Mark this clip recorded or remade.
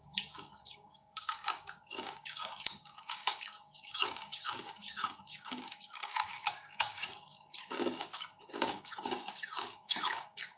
remade